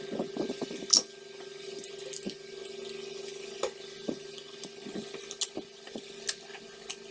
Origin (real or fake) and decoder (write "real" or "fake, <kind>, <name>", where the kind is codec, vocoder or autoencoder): real